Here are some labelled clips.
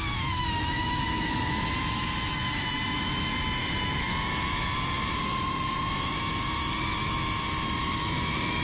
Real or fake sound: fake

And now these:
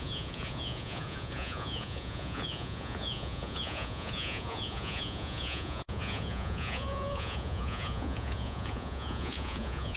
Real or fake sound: fake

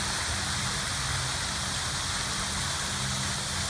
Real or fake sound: real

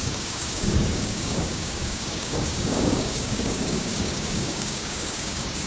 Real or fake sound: fake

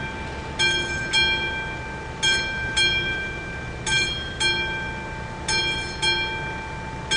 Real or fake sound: real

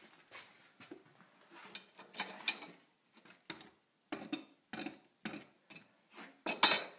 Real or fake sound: real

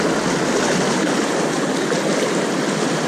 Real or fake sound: real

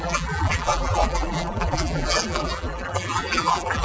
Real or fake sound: fake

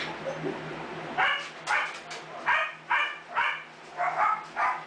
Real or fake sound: real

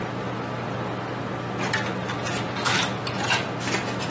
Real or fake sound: real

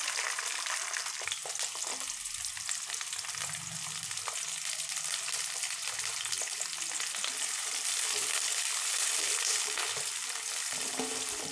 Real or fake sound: real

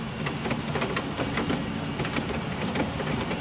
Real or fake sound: real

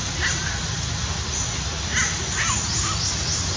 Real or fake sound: real